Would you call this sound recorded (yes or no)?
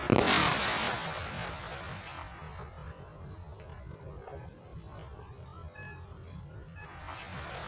yes